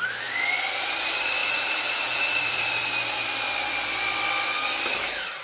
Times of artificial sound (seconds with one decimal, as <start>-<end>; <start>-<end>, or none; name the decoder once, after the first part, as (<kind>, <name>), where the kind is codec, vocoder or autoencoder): 1.4-2.9 (vocoder, Vocos)